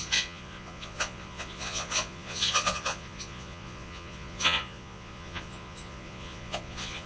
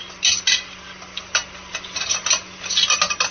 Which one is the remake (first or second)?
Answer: first